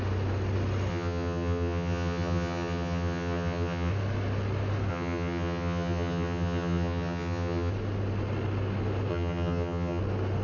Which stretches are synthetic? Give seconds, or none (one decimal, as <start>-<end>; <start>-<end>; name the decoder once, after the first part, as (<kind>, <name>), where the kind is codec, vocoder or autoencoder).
0.9-3.9 (vocoder, HiFi-GAN); 4.9-7.7; 9.1-10.0